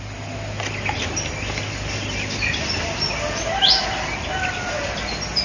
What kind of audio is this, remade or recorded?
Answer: recorded